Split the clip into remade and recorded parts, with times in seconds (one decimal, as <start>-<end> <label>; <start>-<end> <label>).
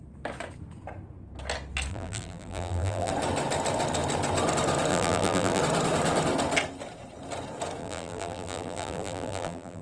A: 0.0-1.9 recorded; 1.9-3.1 remade; 3.1-4.9 recorded; 4.9-5.6 remade; 5.6-7.8 recorded; 7.8-9.8 remade